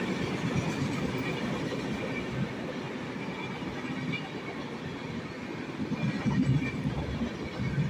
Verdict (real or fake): real